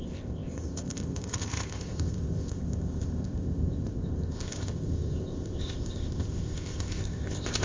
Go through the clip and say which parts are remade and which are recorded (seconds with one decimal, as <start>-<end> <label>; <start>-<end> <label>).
0.0-7.6 remade